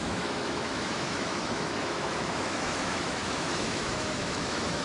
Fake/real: fake